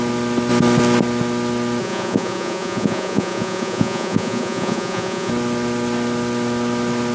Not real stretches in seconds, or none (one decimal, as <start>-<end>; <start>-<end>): 1.8-5.3